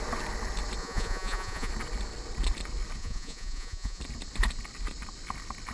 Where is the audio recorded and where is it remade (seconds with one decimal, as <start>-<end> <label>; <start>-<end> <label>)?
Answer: 0.0-0.8 recorded; 0.8-1.7 remade; 1.7-3.0 recorded; 3.0-4.0 remade; 4.0-5.7 recorded